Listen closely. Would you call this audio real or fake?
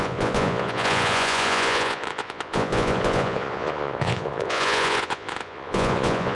fake